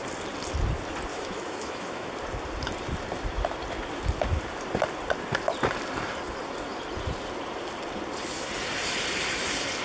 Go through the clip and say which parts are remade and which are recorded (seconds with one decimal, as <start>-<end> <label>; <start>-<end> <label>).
0.0-1.1 recorded; 1.1-2.1 remade; 2.1-9.8 recorded